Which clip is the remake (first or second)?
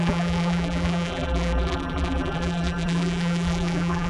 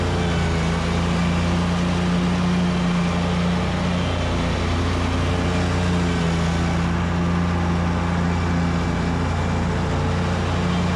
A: first